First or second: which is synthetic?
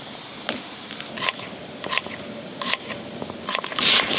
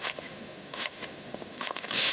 second